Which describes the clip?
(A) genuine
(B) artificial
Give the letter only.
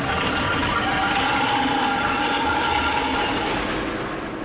A